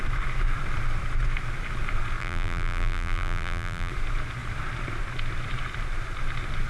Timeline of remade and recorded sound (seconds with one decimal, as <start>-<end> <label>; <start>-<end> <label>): 0.0-2.2 recorded; 2.2-3.9 remade; 3.9-6.7 recorded